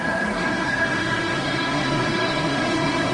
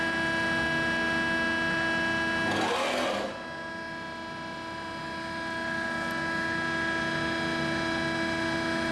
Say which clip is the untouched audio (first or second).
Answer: second